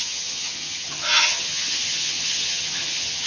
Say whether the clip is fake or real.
fake